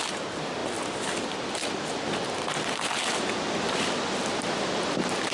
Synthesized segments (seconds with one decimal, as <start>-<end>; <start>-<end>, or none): none